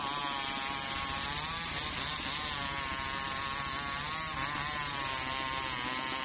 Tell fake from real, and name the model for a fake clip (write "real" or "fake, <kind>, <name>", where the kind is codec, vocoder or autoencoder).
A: real